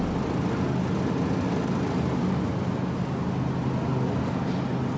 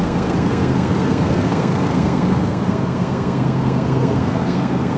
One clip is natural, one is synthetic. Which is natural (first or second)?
first